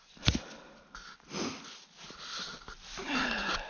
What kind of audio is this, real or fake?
real